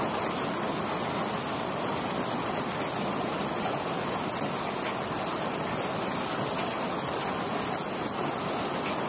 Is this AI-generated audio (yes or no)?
no